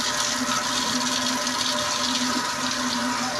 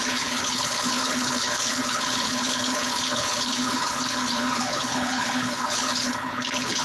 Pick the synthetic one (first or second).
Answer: second